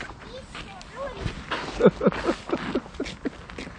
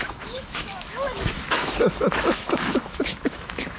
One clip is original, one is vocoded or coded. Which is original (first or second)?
first